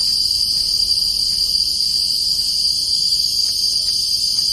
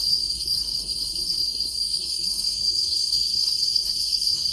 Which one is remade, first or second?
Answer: second